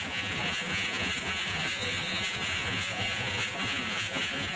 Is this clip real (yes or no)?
no